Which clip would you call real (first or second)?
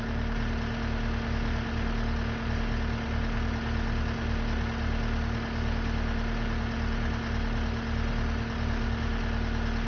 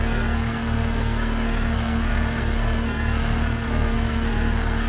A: first